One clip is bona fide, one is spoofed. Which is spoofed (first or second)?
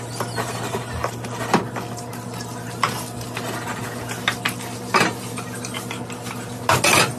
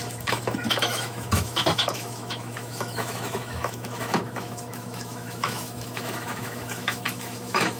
second